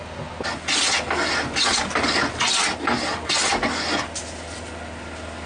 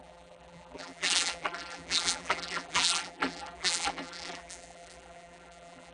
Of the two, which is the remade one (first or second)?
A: second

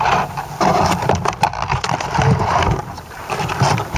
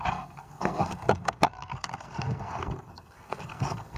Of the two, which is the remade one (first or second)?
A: second